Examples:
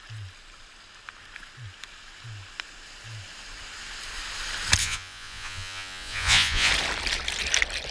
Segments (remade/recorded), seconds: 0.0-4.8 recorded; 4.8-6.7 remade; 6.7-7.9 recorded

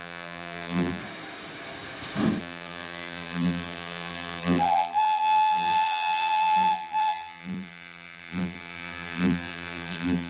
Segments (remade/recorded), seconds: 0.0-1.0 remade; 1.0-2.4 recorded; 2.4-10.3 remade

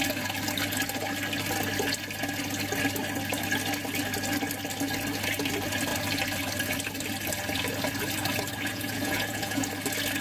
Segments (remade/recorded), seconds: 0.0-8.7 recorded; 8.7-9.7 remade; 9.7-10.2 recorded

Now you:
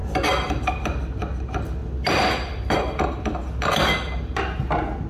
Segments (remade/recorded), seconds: 0.0-5.1 recorded